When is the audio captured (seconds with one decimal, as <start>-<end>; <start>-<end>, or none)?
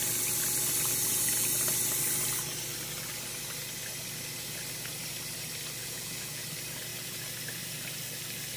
0.0-5.8; 6.4-8.6